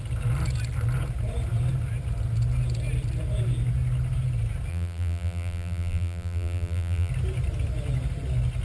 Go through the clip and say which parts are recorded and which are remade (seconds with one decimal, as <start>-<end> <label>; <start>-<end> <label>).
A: 0.0-4.7 recorded; 4.7-7.1 remade; 7.1-8.6 recorded